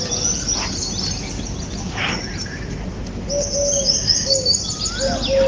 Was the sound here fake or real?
real